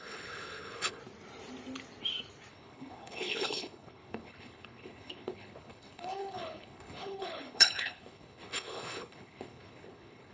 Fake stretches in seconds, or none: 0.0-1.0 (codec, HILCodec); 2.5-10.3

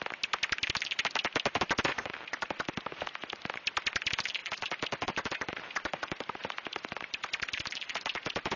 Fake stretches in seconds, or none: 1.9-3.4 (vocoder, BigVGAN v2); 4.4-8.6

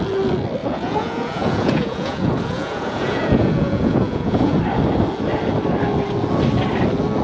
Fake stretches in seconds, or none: 0.6-4.6 (vocoder, Vocos)

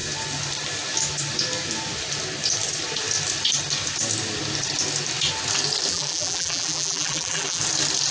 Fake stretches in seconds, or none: 5.9-7.6 (vocoder, BigVGAN v2)

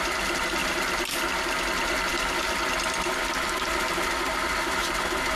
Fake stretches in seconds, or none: none

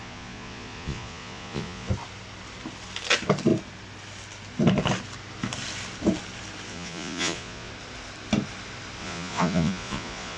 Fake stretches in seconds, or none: 0.0-1.9 (vocoder, Vocos); 6.7-7.7; 9.0-10.4